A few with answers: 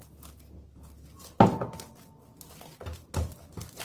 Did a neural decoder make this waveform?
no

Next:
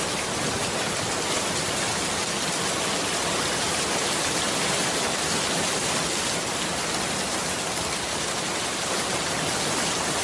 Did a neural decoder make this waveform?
no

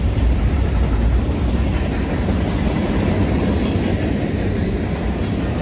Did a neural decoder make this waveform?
no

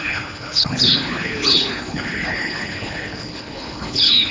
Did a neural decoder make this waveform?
yes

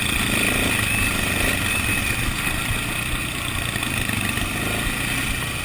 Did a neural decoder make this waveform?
no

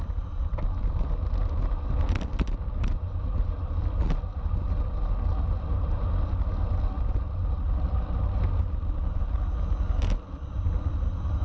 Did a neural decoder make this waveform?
no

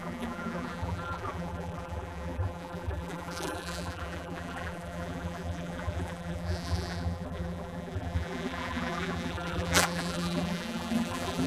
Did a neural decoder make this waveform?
yes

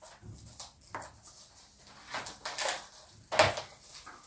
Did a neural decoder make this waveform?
no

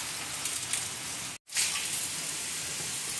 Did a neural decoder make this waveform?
no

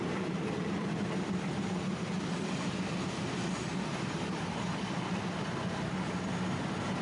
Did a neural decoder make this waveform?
no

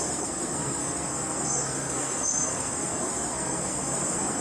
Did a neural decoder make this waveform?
yes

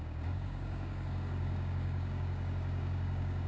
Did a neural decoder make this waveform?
yes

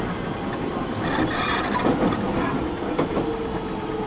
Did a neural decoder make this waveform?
no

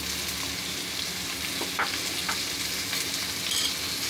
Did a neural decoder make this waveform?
no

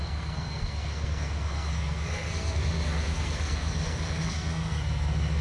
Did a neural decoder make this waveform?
yes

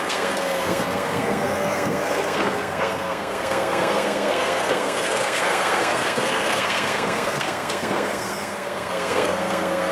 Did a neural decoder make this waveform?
yes